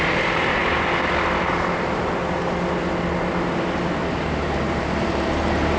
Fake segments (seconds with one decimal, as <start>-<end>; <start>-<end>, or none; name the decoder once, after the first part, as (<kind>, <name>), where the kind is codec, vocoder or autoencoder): 0.0-0.6 (vocoder, BigVGAN v2); 4.1-5.8

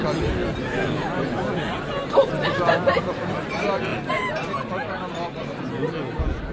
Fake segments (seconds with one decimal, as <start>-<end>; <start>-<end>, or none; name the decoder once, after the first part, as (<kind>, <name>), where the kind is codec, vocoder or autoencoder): none

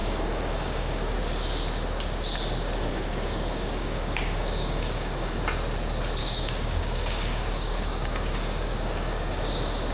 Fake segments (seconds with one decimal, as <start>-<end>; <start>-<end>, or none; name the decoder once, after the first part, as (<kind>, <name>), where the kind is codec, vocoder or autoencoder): 0.0-1.2 (codec, DAC); 2.9-5.4; 6.2-9.5

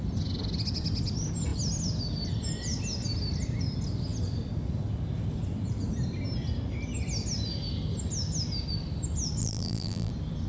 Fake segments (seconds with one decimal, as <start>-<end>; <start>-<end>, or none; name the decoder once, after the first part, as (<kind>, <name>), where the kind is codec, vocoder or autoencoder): 9.4-10.1 (vocoder, BigVGAN v2)